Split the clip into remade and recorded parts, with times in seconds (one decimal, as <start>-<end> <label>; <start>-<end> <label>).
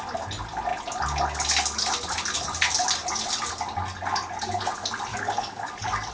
0.0-5.1 recorded; 5.1-6.1 remade